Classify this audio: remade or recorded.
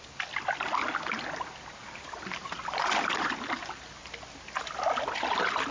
recorded